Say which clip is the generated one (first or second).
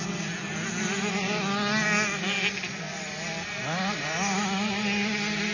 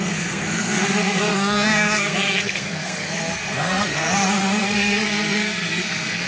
second